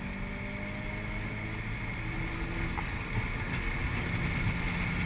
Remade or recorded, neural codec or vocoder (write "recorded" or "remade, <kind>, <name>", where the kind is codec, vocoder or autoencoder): recorded